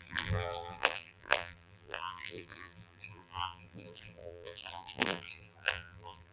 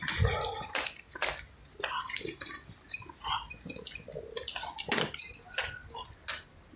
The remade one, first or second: first